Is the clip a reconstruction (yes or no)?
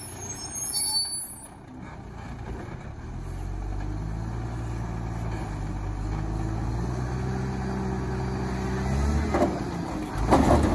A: no